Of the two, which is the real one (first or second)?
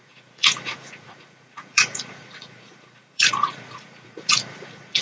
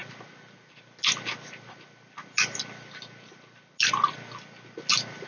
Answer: second